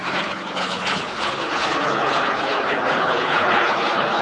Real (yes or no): no